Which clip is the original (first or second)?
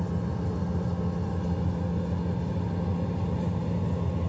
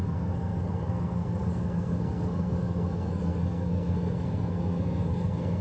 first